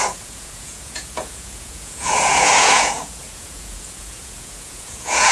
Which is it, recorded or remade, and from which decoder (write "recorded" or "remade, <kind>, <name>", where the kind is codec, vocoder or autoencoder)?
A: remade, vocoder, Vocos